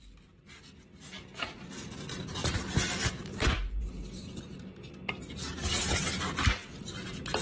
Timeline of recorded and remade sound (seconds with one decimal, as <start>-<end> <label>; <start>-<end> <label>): 0.0-2.4 recorded; 2.4-4.8 remade; 4.8-7.4 recorded